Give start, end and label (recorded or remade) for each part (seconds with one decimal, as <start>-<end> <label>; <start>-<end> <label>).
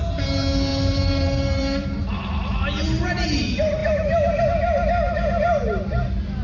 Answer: 0.0-0.7 recorded; 0.7-2.0 remade; 2.0-3.8 recorded; 3.8-4.4 remade; 4.4-6.4 recorded